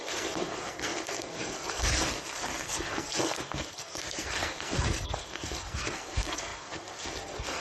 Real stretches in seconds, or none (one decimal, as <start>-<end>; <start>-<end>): none